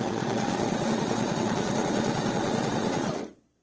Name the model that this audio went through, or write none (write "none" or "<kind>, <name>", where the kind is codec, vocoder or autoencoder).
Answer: vocoder, Vocos